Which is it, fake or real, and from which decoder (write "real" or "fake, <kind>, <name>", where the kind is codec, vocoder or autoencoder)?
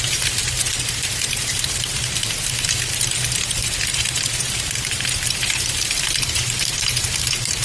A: fake, vocoder, BigVGAN v2